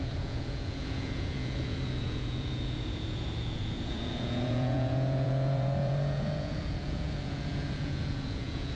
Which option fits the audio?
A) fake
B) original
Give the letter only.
A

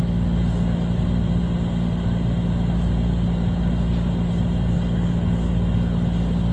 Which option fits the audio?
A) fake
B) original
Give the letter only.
B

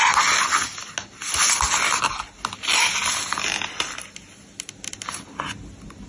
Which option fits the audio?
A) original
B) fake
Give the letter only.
A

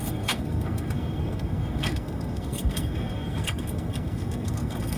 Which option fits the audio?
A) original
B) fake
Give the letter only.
B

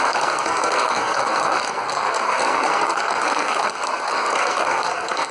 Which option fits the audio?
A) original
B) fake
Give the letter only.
B